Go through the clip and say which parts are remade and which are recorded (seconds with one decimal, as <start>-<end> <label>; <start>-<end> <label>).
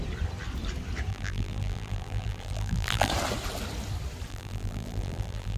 0.0-1.1 recorded; 1.1-3.1 remade; 3.1-4.3 recorded; 4.3-5.6 remade